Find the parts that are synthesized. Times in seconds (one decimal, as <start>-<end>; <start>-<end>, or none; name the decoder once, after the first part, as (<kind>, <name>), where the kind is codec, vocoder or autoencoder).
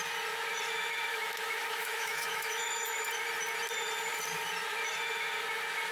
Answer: 1.1-3.1 (autoencoder, DAC-VAE)